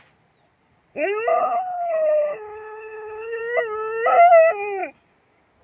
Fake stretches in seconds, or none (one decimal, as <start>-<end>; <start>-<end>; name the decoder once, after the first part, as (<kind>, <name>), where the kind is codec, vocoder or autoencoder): 1.4-3.4 (codec, HILCodec)